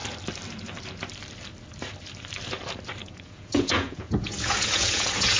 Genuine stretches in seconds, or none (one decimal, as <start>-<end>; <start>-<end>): 0.0-3.0